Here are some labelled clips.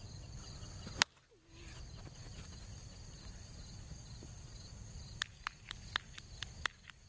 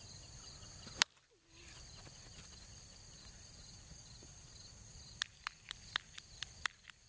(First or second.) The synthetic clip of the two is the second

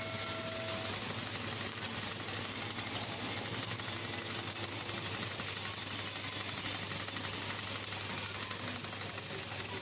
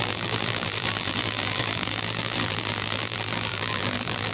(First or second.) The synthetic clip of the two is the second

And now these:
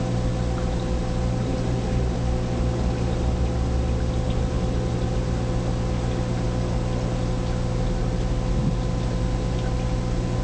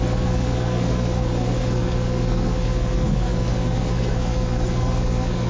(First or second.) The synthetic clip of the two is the second